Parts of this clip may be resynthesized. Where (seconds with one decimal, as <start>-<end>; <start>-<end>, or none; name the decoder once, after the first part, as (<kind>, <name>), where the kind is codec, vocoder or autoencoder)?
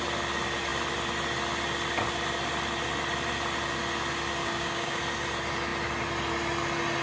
4.4-5.0 (codec, DAC)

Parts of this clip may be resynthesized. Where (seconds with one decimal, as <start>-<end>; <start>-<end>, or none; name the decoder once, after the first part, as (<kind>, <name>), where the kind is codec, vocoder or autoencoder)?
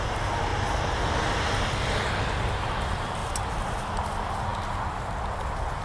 none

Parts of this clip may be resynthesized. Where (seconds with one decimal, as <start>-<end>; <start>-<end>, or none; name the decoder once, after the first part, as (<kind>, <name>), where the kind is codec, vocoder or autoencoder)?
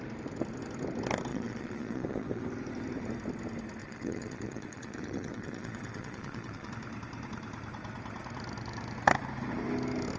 1.3-2.4 (vocoder, Vocos); 3.8-6.7